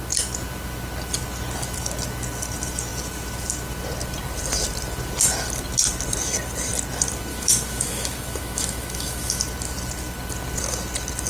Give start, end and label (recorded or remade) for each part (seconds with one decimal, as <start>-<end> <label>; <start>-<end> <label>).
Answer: 0.0-7.3 recorded; 7.3-9.4 remade; 9.4-11.3 recorded